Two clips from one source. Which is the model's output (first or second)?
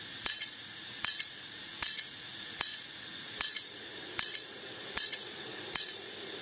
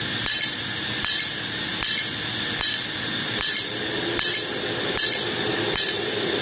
first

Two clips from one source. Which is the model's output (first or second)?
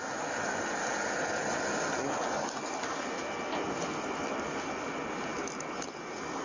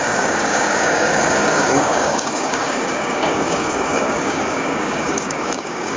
second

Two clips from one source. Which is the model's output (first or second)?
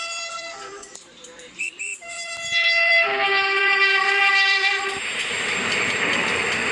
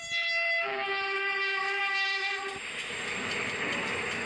first